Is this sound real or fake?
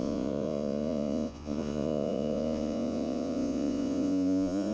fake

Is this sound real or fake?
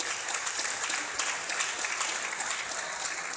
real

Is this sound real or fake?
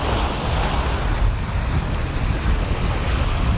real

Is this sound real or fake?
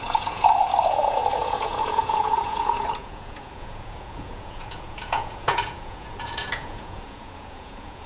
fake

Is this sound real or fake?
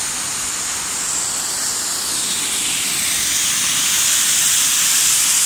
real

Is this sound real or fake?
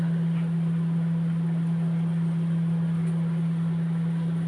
real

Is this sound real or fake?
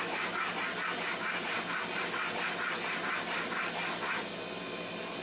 real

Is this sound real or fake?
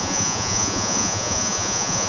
fake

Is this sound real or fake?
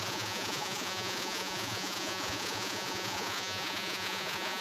fake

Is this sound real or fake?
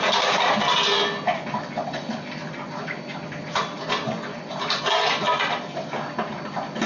real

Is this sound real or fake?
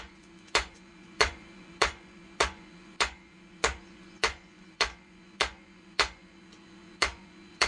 fake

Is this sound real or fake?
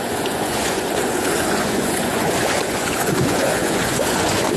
fake